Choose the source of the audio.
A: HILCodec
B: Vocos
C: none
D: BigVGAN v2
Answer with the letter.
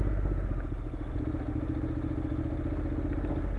C